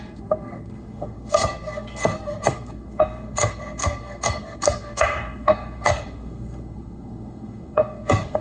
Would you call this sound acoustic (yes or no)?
no